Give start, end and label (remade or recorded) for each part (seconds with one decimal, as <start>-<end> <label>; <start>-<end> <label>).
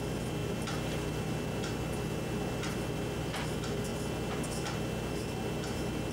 0.0-6.1 recorded